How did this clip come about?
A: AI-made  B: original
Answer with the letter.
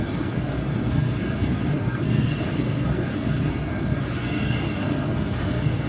A